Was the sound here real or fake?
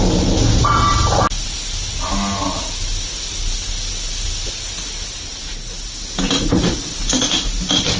real